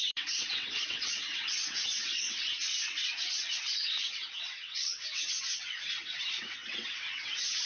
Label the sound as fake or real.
fake